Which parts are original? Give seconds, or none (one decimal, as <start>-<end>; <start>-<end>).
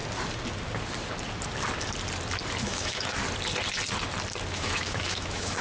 0.0-2.6; 3.2-4.5